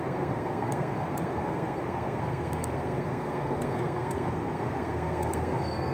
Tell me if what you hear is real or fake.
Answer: fake